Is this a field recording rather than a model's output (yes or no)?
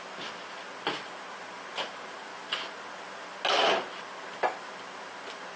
yes